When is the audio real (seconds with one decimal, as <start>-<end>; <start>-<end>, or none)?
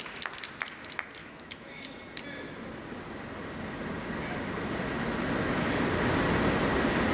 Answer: 0.0-1.2; 1.8-7.1